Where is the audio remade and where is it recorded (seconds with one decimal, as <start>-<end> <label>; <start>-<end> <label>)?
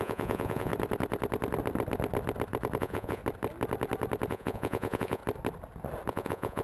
0.0-0.7 remade; 0.7-2.8 recorded; 2.8-3.2 remade; 3.2-4.3 recorded; 4.3-5.2 remade; 5.2-6.1 recorded; 6.1-6.6 remade